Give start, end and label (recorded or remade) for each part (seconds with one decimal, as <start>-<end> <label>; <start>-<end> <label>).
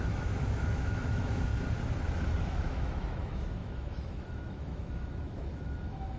0.0-1.5 remade; 1.5-2.4 recorded; 2.4-6.2 remade